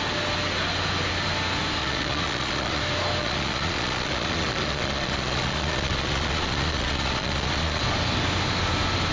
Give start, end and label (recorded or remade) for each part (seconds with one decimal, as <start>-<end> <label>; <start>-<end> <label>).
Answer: 0.0-1.8 recorded; 1.8-2.8 remade; 2.8-3.2 recorded; 3.2-7.8 remade; 7.8-9.1 recorded